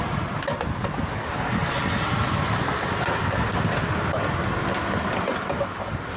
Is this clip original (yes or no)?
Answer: yes